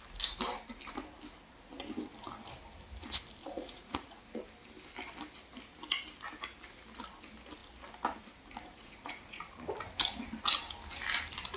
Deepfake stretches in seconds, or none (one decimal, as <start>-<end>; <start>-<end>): 3.4-4.2; 8.7-9.4